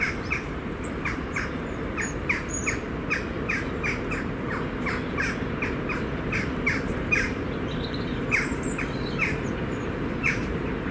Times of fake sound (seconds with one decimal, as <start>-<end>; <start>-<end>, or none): 0.0-2.6; 6.9-10.9